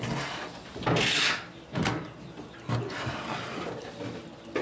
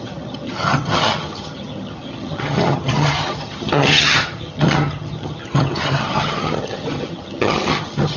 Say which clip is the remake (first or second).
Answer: second